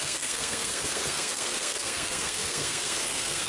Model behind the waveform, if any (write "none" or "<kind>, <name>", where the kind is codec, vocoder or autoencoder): codec, SNAC